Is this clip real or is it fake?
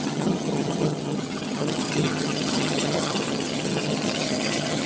fake